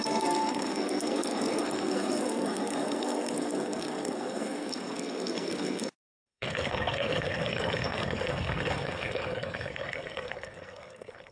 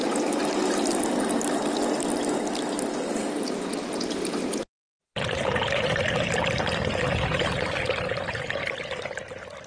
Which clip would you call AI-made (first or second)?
first